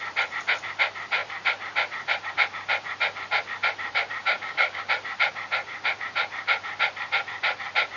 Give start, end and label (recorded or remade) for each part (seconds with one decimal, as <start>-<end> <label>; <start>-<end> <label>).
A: 0.0-4.2 recorded; 4.2-4.8 remade; 4.8-8.0 recorded